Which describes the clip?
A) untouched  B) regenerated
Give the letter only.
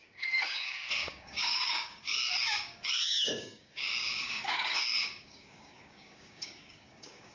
B